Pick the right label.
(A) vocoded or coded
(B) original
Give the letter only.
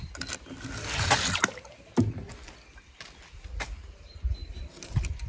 B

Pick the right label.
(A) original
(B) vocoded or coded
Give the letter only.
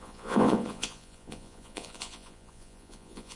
B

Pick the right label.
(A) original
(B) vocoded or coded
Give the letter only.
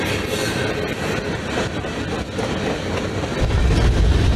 A